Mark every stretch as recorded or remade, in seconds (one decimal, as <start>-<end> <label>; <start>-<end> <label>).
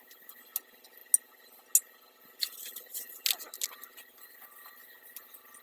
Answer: 0.0-5.6 recorded